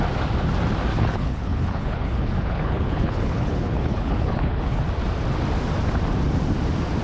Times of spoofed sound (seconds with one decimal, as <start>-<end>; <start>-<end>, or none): 0.9-4.8